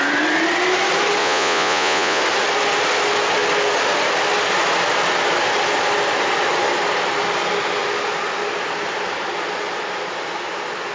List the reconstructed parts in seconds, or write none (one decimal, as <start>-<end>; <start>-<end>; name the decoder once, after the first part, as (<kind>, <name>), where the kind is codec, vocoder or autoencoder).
1.2-2.2 (vocoder, Vocos)